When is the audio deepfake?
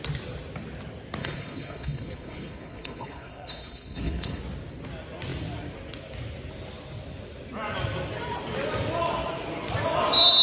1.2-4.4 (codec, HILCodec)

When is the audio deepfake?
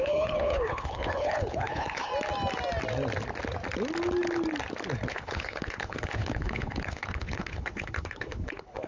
0.0-2.1 (codec, HILCodec); 5.1-8.9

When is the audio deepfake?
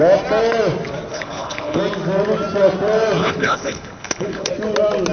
1.1-1.8 (codec, HILCodec); 3.2-4.5